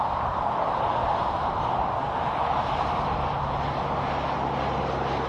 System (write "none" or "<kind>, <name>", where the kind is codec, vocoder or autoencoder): none